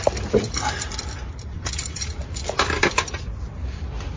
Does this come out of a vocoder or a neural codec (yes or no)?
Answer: yes